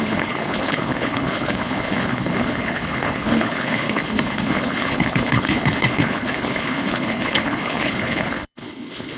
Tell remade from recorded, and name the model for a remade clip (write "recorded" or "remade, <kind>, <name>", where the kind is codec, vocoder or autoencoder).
remade, codec, HILCodec